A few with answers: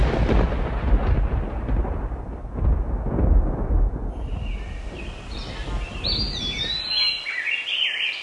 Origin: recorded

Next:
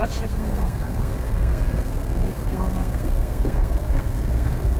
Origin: remade